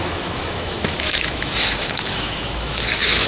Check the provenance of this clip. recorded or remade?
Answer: remade